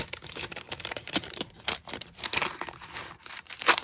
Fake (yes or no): yes